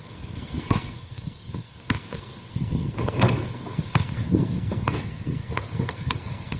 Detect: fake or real fake